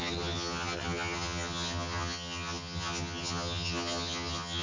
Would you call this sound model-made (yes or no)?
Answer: yes